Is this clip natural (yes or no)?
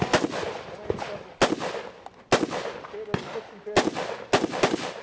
yes